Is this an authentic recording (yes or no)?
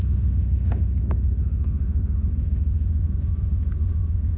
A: no